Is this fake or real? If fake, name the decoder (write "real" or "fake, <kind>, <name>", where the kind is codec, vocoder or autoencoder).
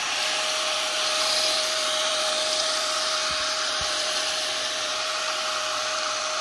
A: fake, vocoder, BigVGAN v2